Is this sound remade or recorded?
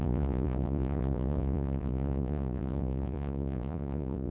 remade